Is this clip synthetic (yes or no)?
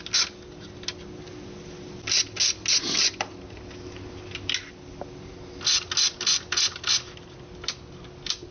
no